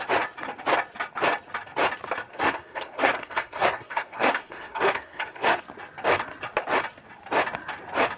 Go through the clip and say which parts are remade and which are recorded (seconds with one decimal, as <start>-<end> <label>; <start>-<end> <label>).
0.0-2.3 recorded; 2.3-5.6 remade; 5.6-8.2 recorded